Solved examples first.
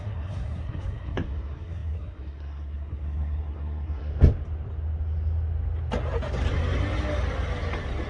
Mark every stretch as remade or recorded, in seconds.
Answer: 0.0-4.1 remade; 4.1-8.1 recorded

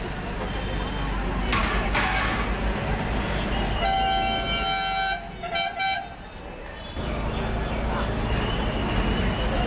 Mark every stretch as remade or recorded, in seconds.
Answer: 0.0-1.6 recorded; 1.6-2.4 remade; 2.4-9.7 recorded

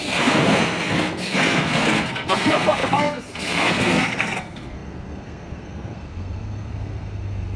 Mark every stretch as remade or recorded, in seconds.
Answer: 0.0-7.6 remade